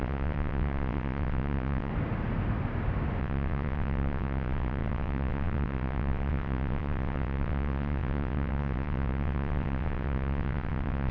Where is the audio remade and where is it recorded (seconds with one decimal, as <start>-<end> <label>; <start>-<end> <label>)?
0.0-1.9 remade; 1.9-3.2 recorded; 3.2-11.1 remade